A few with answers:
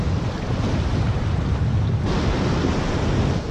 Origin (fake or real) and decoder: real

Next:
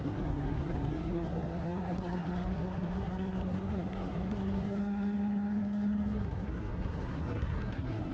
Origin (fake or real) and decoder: fake, codec, SNAC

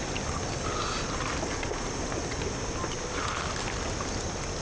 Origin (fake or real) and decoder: real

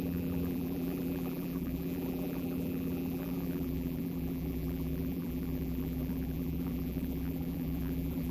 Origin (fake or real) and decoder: fake, vocoder, BigVGAN v2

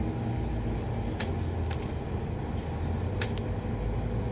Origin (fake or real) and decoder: real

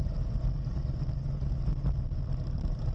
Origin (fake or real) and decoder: real